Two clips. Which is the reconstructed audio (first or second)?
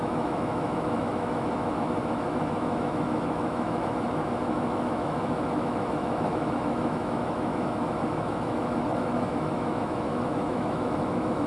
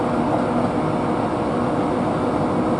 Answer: first